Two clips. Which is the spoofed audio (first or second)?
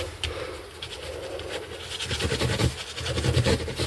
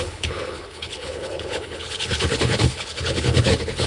second